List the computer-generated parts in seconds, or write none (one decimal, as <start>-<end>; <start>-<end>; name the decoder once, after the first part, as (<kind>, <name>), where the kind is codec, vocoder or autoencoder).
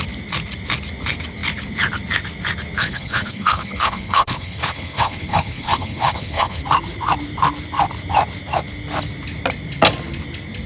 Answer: 2.8-6.6 (codec, HILCodec)